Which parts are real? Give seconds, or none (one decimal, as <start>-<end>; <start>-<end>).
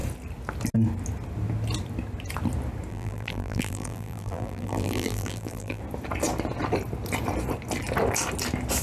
0.0-2.9; 5.8-8.8